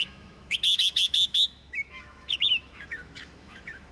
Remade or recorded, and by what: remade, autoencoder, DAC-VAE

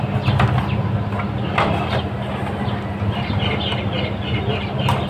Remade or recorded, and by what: recorded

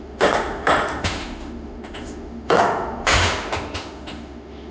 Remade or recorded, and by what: remade, autoencoder, DAC-VAE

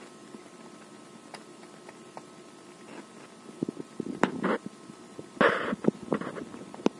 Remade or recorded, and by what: recorded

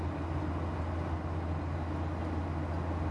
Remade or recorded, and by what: recorded